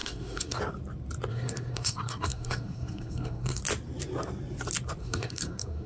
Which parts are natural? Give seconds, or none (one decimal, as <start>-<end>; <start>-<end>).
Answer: 0.6-1.3; 3.6-5.0